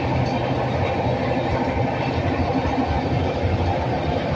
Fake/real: real